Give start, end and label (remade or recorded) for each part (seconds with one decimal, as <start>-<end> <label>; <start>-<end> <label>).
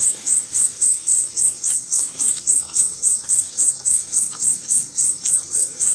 0.0-5.9 remade